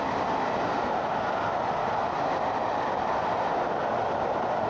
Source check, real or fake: real